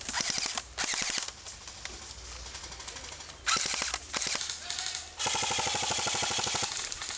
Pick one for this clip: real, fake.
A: real